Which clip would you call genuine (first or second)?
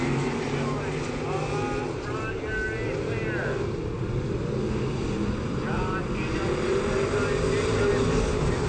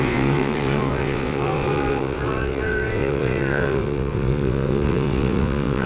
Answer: first